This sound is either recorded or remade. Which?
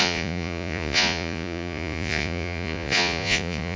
remade